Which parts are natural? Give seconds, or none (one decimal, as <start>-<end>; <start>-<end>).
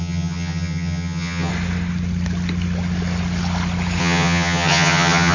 1.5-4.0